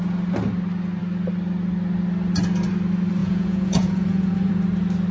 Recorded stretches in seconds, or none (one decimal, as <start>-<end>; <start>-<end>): 0.0-3.2; 4.5-5.1